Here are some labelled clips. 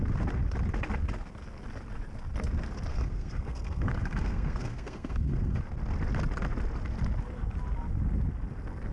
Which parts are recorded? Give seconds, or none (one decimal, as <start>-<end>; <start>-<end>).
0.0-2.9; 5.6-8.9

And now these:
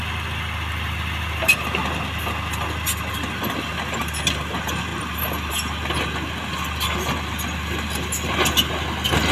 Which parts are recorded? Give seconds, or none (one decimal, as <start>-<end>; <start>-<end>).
0.0-9.3

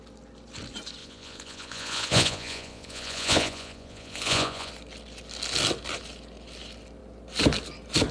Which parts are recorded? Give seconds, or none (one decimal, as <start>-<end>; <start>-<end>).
0.0-1.0; 4.7-8.1

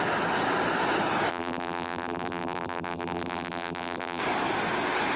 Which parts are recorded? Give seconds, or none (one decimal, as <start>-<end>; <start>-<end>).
0.0-1.3; 4.2-5.2

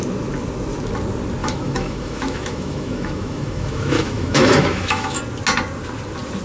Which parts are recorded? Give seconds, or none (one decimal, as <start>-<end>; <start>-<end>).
0.0-1.4; 5.2-6.4

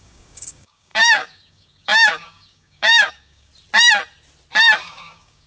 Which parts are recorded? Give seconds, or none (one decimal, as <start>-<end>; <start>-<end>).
3.5-4.8

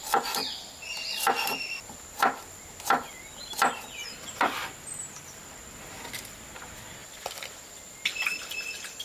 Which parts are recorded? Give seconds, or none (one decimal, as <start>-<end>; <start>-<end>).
none

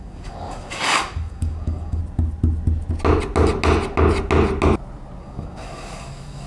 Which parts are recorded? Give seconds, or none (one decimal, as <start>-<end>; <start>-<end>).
2.0-5.2